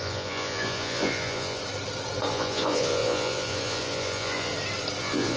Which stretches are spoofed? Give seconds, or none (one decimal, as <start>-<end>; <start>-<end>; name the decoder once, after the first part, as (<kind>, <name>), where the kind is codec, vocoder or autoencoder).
0.0-1.6 (vocoder, Vocos); 2.3-4.5; 5.0-5.4